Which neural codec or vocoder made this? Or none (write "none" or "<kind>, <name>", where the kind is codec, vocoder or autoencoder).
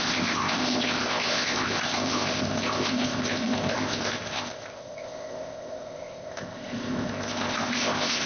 codec, ZipCodec